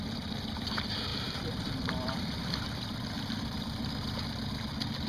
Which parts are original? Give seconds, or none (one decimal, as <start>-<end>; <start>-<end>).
0.0-1.1; 4.2-5.1